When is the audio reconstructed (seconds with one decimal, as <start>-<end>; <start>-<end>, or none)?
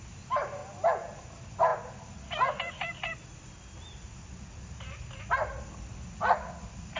none